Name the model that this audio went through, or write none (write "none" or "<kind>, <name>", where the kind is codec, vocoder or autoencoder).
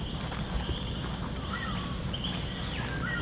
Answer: none